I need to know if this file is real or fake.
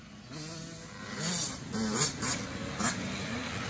real